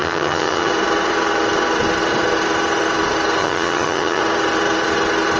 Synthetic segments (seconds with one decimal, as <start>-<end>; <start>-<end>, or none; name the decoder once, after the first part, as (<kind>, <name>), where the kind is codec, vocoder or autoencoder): 0.0-0.7 (vocoder, HiFi-GAN); 3.4-4.2